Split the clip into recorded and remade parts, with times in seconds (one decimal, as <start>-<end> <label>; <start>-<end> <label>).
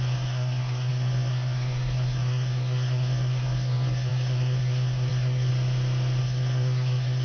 0.0-5.5 remade; 5.5-6.2 recorded; 6.2-7.2 remade